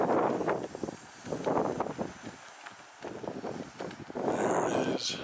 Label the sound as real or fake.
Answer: real